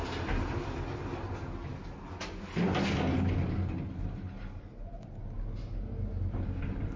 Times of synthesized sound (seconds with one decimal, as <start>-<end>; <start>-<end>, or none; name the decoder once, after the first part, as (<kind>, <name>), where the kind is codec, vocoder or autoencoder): none